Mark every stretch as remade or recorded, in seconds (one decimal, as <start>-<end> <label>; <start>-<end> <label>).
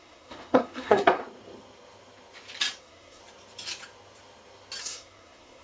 0.0-1.2 remade; 1.2-2.8 recorded; 2.8-3.2 remade; 3.2-4.8 recorded; 4.8-5.6 remade